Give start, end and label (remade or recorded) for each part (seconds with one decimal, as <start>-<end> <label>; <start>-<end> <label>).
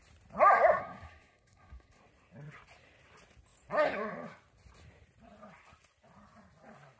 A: 0.0-0.8 recorded; 0.8-2.0 remade; 2.0-7.0 recorded